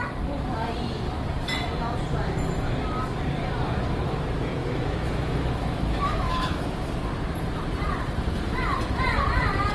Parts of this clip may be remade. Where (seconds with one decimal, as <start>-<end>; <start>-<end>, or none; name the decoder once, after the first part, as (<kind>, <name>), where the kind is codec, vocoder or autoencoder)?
4.6-6.9 (autoencoder, DAC-VAE)